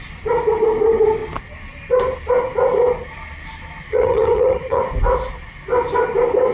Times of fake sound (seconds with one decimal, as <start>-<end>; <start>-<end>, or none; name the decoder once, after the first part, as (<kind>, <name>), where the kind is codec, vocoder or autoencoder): 3.9-4.8 (vocoder, HiFi-GAN)